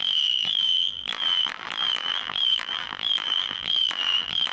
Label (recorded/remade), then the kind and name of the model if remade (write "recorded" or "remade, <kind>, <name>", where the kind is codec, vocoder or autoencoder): remade, vocoder, BigVGAN v2